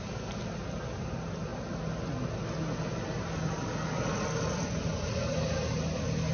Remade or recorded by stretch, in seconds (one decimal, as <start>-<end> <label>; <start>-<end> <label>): 0.0-6.3 recorded